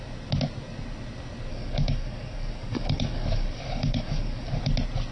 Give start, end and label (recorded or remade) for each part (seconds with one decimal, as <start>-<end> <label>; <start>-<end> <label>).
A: 0.0-1.5 recorded; 1.5-4.6 remade; 4.6-5.1 recorded